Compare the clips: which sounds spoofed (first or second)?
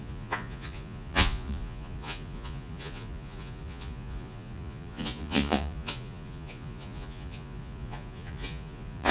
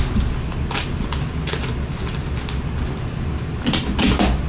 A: first